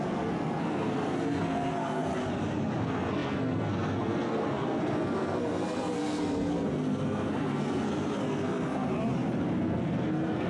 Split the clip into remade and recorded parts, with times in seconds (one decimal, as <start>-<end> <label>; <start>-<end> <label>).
0.0-2.1 remade; 2.1-2.8 recorded; 2.8-8.9 remade; 8.9-9.6 recorded; 9.6-10.5 remade